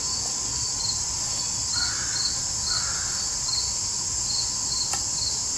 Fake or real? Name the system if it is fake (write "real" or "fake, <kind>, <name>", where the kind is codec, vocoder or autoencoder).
real